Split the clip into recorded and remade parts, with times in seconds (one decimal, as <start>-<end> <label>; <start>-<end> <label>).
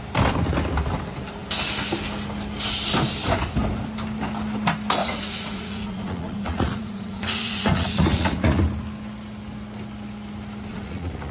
0.0-5.0 recorded; 5.0-8.6 remade; 8.6-10.7 recorded; 10.7-11.3 remade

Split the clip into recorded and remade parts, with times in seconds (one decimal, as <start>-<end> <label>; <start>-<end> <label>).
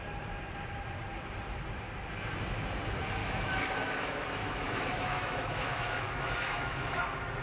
0.0-3.2 recorded; 3.2-7.0 remade; 7.0-7.4 recorded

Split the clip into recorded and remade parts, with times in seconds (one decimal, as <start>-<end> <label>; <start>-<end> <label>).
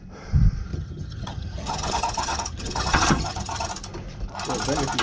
0.0-0.7 recorded; 0.7-3.7 remade; 3.7-5.0 recorded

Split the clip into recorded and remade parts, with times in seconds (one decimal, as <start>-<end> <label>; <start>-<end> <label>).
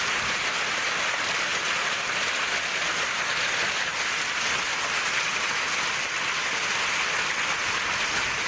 0.0-8.5 recorded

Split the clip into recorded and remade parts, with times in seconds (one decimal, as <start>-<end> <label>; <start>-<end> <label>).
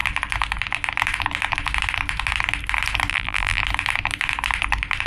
0.0-3.1 recorded; 3.1-3.6 remade; 3.6-5.1 recorded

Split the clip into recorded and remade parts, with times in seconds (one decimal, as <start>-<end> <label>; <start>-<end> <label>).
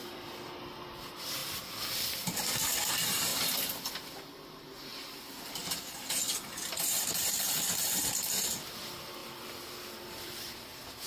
0.0-1.4 remade; 1.4-2.9 recorded; 2.9-3.3 remade; 3.3-4.1 recorded; 4.1-11.1 remade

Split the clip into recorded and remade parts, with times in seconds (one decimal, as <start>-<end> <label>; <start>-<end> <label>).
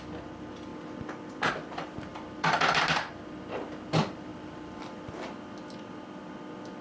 0.0-2.1 recorded; 2.1-2.8 remade; 2.8-6.8 recorded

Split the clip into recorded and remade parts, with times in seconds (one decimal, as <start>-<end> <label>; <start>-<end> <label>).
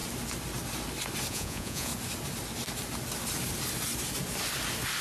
0.0-1.3 recorded; 1.3-1.9 remade; 1.9-5.0 recorded